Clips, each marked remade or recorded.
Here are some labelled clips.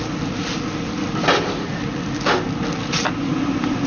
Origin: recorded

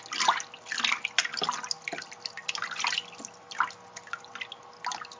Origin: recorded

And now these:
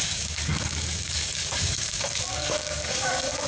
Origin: remade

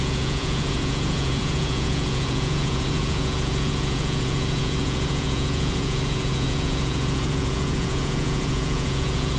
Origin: remade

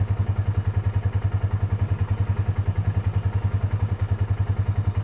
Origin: recorded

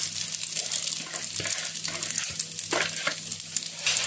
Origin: recorded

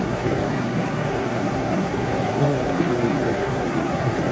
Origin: remade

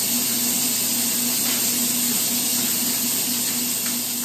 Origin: recorded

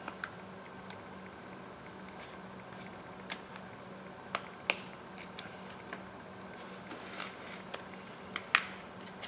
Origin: recorded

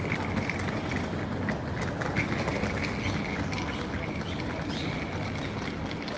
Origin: recorded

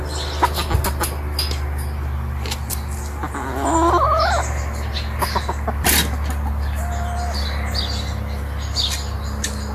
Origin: recorded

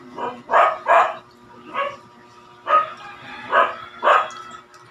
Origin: recorded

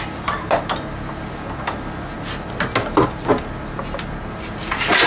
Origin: recorded